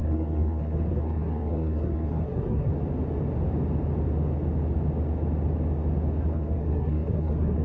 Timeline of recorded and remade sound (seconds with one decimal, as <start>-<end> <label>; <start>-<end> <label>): 0.0-2.7 remade; 2.7-6.3 recorded; 6.3-7.6 remade